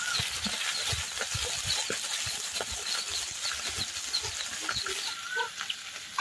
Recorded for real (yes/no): yes